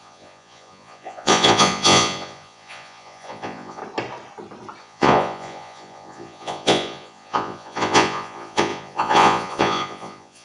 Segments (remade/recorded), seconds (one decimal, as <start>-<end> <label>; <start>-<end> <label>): 0.0-3.8 remade; 3.8-4.8 recorded; 4.8-10.4 remade